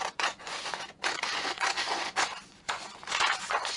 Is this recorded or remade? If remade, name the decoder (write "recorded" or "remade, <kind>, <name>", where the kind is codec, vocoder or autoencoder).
remade, vocoder, Vocos